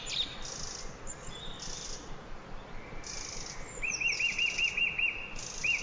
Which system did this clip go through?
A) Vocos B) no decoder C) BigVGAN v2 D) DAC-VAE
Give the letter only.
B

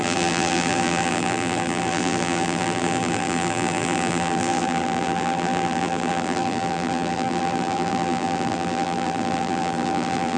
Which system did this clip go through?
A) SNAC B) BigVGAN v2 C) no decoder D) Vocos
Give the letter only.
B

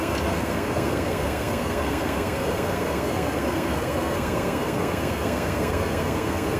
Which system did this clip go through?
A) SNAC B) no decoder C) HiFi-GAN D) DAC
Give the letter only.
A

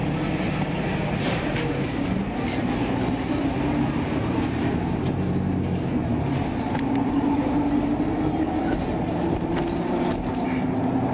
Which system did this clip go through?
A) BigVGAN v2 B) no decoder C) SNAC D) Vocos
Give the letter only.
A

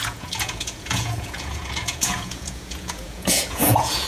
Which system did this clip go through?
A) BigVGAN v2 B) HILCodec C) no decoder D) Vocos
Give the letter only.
D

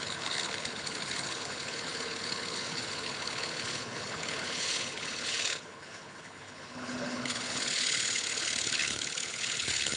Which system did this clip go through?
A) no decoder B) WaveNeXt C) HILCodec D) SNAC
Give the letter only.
C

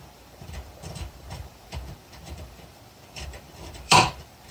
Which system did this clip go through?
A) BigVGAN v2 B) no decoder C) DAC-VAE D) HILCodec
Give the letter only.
A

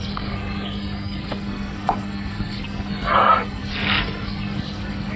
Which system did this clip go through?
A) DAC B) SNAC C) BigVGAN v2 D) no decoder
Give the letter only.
B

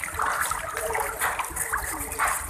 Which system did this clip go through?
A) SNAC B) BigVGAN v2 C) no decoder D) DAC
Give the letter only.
C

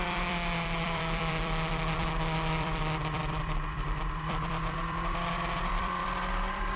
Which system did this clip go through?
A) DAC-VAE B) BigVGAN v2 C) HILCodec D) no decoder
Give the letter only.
B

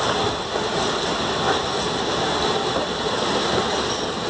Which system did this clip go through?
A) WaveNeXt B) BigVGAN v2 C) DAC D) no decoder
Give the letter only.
D